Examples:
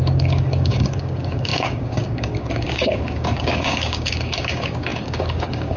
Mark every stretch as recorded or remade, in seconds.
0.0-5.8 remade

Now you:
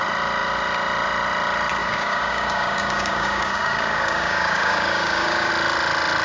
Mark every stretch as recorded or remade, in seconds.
0.0-1.8 recorded; 1.8-5.5 remade; 5.5-6.2 recorded

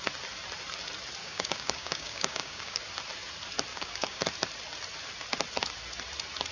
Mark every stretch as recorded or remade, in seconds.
0.0-1.2 recorded; 1.2-2.8 remade; 2.8-3.7 recorded; 3.7-4.2 remade; 4.2-6.5 recorded

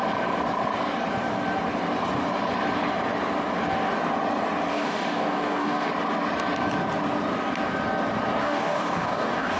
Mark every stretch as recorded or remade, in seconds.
0.0-4.7 recorded; 4.7-5.9 remade; 5.9-8.4 recorded; 8.4-9.6 remade

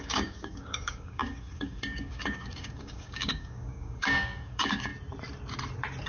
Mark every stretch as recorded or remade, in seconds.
0.0-4.9 remade; 4.9-6.1 recorded

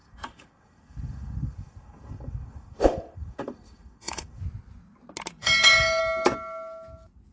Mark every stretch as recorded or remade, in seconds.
0.0-4.4 remade; 4.4-5.4 recorded; 5.4-6.0 remade; 6.0-7.3 recorded

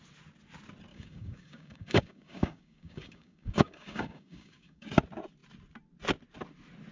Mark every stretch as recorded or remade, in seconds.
0.0-0.9 recorded; 0.9-4.9 remade; 4.9-6.9 recorded